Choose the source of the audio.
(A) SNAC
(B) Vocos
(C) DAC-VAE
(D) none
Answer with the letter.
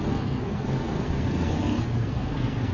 A